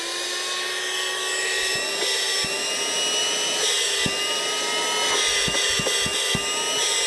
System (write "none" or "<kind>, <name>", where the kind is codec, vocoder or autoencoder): none